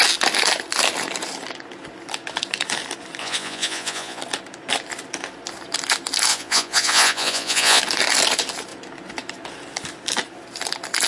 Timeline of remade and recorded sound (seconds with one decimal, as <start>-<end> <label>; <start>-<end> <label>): 0.0-3.2 recorded; 3.2-4.2 remade; 4.2-6.3 recorded; 6.3-7.8 remade; 7.8-11.1 recorded